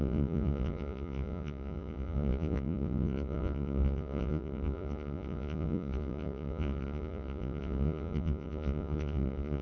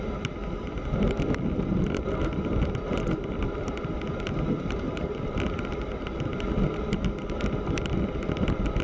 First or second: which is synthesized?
first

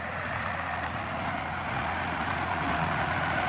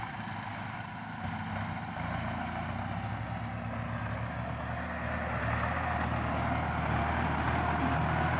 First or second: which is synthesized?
first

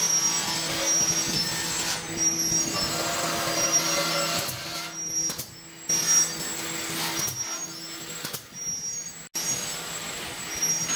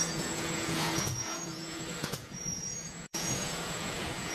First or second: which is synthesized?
second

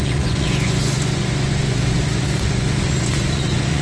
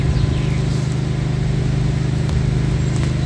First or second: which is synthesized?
first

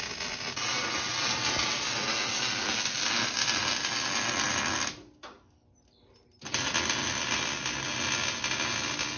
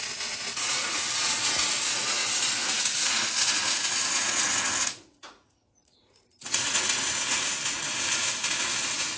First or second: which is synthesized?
second